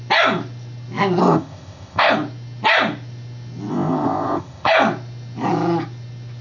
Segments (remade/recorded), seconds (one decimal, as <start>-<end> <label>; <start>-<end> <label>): 0.0-1.2 recorded; 1.2-2.1 remade; 2.1-3.7 recorded; 3.7-4.7 remade; 4.7-6.4 recorded